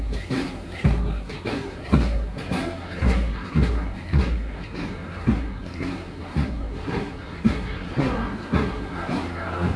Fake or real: fake